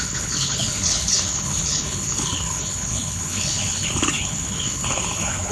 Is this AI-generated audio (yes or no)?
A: yes